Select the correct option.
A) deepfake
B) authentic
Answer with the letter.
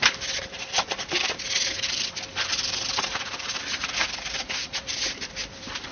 A